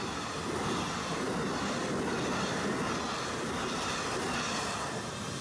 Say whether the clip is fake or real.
real